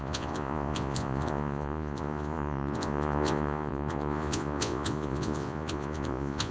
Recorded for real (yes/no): no